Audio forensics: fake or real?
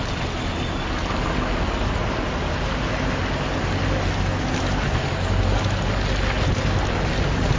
real